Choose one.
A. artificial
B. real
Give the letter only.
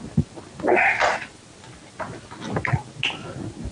B